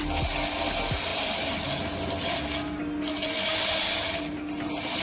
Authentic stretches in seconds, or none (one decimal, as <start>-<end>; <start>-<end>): 0.0-5.0